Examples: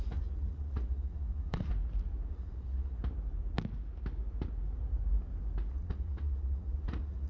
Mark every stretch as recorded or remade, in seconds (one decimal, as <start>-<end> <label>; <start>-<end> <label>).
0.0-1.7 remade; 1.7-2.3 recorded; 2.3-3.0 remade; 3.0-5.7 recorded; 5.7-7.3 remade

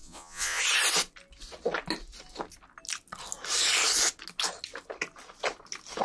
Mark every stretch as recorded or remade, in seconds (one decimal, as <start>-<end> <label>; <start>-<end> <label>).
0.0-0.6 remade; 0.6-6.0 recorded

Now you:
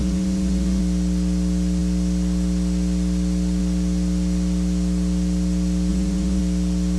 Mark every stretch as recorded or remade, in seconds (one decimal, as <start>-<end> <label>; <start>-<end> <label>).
0.0-0.8 remade; 0.8-5.9 recorded; 5.9-6.4 remade; 6.4-7.0 recorded